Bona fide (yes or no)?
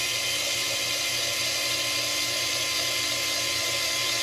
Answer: yes